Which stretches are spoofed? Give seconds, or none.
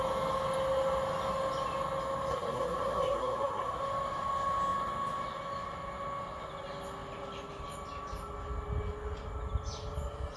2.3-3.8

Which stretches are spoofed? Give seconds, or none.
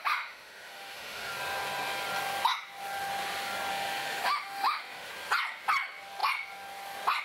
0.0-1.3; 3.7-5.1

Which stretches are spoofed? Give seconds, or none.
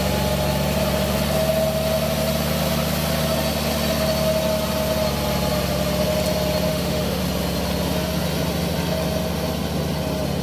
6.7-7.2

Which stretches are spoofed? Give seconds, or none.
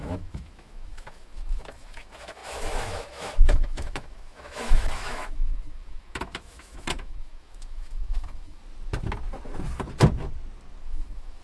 0.0-8.6; 10.8-11.4